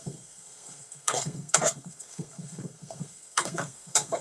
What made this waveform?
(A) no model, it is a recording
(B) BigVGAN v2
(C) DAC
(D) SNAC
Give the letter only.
D